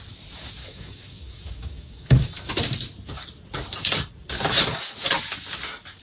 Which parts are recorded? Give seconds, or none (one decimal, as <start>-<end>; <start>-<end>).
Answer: 0.0-0.6; 2.5-4.7; 5.2-6.0